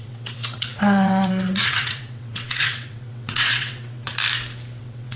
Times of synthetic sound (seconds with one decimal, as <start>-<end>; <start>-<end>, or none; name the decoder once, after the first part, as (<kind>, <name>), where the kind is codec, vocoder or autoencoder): 0.0-4.1 (vocoder, WaveNeXt); 4.8-5.2